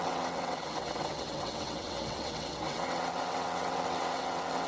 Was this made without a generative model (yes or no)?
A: no